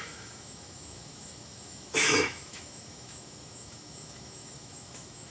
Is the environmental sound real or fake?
fake